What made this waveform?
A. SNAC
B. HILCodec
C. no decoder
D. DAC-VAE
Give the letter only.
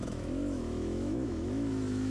D